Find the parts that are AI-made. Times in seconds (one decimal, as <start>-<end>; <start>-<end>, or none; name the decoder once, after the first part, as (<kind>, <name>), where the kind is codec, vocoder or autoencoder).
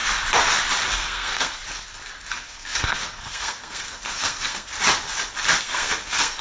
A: 0.9-1.6 (codec, SNAC); 2.3-4.7; 5.6-6.4